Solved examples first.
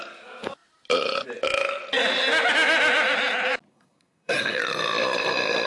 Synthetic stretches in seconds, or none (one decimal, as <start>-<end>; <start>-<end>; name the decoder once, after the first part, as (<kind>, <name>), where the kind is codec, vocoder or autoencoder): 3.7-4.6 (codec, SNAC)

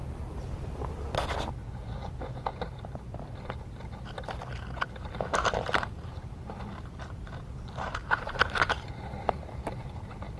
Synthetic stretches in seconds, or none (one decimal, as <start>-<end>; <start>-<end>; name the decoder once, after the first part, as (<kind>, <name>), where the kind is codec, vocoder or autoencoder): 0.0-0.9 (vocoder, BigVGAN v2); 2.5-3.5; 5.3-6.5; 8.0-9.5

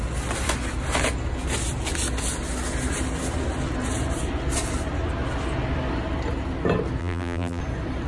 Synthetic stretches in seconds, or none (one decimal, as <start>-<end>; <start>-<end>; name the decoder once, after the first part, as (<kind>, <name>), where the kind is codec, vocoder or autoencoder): 7.0-7.6 (vocoder, BigVGAN v2)

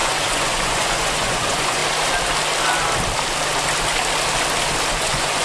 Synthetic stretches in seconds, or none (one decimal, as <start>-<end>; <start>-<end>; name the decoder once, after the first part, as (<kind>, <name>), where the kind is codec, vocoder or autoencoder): 0.0-1.8 (vocoder, Vocos); 5.0-5.4

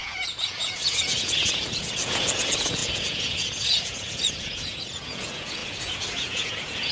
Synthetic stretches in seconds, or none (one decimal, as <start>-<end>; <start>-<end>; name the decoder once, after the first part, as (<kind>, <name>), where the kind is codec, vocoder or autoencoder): 0.0-6.9 (vocoder, Vocos)

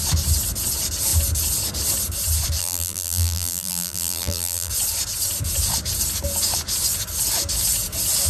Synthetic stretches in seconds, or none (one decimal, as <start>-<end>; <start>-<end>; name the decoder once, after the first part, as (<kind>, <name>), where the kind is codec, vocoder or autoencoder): 2.6-4.7 (vocoder, BigVGAN v2)

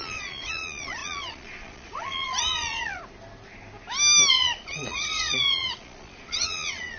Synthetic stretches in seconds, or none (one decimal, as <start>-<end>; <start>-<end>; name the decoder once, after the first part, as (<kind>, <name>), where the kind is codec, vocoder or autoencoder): 0.0-3.0 (vocoder, Vocos); 4.3-7.0